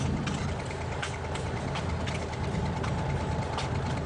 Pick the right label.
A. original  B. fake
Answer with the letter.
A